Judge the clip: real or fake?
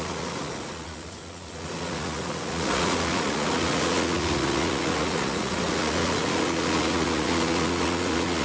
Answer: fake